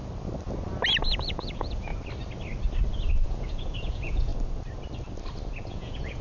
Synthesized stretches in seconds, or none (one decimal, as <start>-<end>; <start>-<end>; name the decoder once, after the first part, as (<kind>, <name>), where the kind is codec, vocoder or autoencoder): 1.2-1.9 (vocoder, Vocos); 3.1-4.3; 5.7-6.2